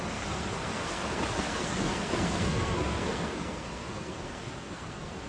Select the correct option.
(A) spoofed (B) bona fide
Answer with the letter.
A